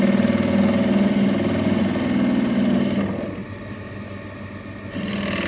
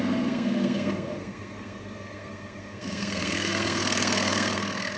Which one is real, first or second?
first